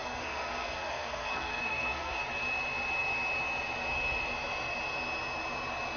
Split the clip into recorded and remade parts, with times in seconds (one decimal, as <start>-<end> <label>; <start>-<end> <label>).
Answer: 0.0-2.2 remade; 2.2-6.0 recorded